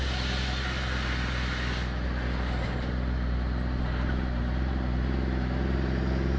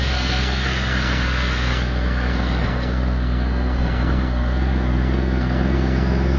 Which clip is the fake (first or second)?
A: second